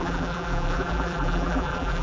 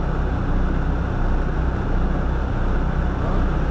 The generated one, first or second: first